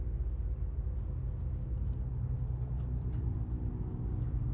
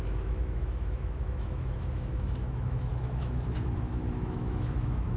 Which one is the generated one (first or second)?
second